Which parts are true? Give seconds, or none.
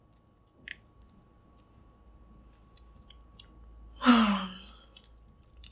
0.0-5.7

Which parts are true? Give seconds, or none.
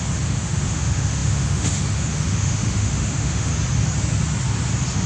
3.5-5.1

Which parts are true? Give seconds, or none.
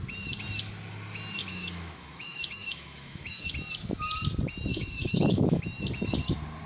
0.0-1.4; 3.5-4.7; 5.6-6.7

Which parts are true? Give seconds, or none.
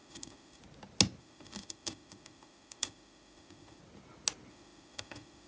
0.6-1.2; 3.8-4.5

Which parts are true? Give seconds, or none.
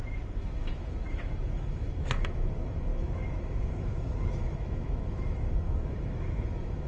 none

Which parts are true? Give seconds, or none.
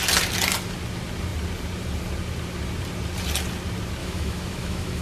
0.0-4.0